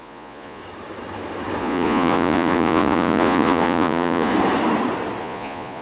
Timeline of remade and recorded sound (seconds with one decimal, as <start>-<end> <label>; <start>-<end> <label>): 0.0-0.6 remade; 0.6-1.6 recorded; 1.6-4.3 remade; 4.3-5.2 recorded; 5.2-5.8 remade